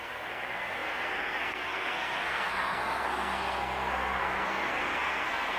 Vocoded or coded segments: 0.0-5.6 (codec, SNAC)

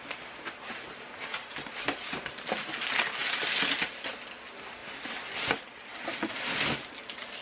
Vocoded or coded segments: none

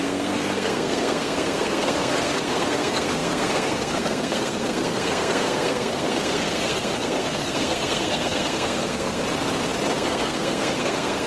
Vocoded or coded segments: 0.0-9.2 (codec, SNAC); 9.9-11.3

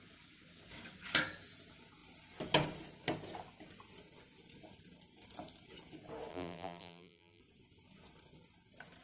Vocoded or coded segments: 6.3-7.4 (vocoder, BigVGAN v2)

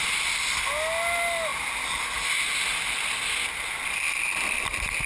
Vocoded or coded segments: none